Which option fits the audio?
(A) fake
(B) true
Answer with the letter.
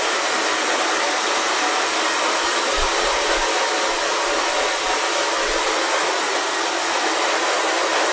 B